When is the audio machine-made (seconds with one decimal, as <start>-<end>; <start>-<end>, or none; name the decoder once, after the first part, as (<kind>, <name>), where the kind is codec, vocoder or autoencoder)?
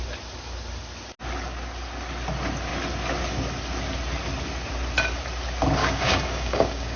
5.8-7.0 (codec, DAC)